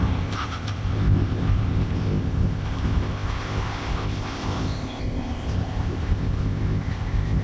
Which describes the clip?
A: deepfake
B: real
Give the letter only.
A